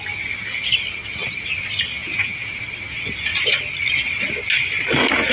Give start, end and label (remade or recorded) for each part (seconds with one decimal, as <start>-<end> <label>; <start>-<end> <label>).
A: 0.0-2.0 recorded; 2.0-2.6 remade; 2.6-5.3 recorded